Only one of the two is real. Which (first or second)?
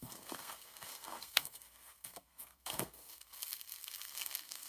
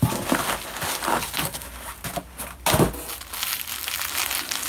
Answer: second